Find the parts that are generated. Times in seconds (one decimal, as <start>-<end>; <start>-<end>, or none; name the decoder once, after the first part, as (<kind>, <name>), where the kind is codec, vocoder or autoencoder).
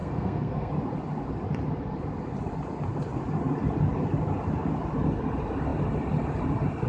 0.0-0.7 (codec, SNAC)